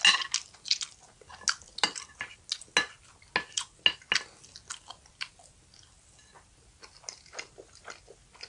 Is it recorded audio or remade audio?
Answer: recorded